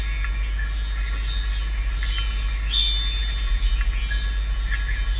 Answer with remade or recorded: recorded